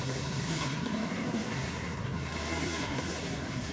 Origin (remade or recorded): remade